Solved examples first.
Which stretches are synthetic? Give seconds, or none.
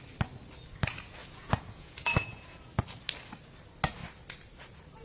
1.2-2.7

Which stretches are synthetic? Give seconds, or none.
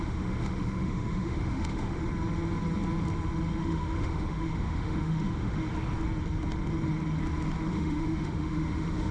0.0-2.0; 3.6-5.7; 7.7-9.1